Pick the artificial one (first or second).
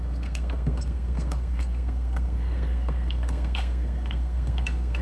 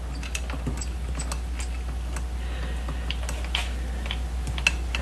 first